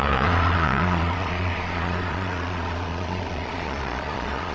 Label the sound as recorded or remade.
remade